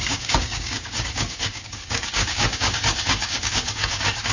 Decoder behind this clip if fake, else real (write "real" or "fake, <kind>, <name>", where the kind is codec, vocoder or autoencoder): fake, codec, DAC